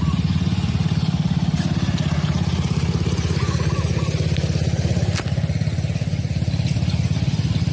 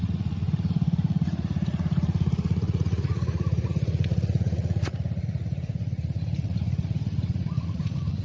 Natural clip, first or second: first